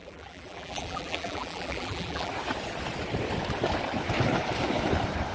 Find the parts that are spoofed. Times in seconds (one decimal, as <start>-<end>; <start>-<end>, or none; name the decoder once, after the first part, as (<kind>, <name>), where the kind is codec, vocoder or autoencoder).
0.0-2.3 (vocoder, BigVGAN v2)